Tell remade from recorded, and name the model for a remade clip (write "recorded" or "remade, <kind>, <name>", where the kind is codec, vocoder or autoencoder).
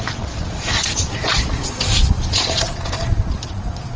remade, vocoder, Vocos